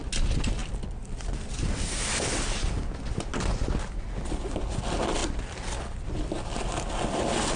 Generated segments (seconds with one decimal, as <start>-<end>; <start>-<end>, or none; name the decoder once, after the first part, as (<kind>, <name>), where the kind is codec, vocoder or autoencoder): 0.6-2.1 (vocoder, BigVGAN v2)